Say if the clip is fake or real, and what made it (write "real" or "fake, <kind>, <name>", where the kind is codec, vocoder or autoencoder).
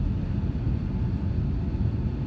real